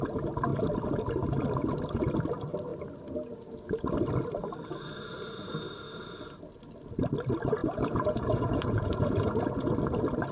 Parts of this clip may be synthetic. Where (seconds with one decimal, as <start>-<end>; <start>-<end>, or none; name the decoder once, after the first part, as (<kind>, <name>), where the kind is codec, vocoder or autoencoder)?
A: 7.6-9.7 (vocoder, Vocos)